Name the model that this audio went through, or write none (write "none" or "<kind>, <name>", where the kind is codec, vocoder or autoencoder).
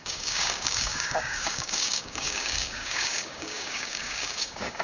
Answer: codec, DAC